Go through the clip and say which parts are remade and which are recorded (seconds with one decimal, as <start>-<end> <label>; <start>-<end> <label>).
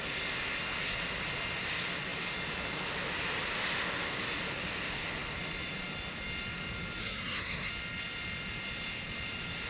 0.0-7.0 recorded; 7.0-7.7 remade; 7.7-9.7 recorded